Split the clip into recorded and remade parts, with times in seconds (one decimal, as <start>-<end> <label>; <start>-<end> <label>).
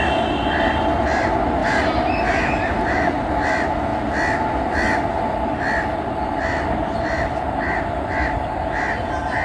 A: 0.0-1.6 recorded; 1.6-3.3 remade; 3.3-9.4 recorded